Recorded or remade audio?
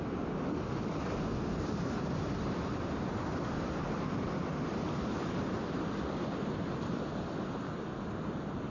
recorded